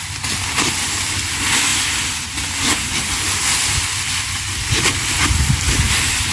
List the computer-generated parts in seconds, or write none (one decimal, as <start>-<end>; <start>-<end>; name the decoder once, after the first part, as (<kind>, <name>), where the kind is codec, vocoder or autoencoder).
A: none